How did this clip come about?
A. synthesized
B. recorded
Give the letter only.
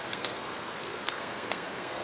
A